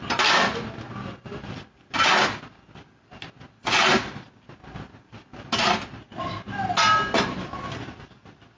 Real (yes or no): yes